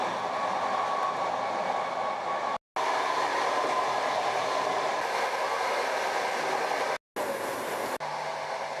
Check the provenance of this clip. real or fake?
real